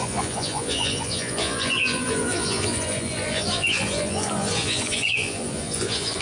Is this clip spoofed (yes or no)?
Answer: yes